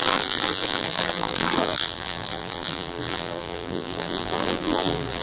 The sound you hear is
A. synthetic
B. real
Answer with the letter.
A